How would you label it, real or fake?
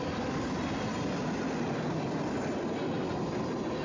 real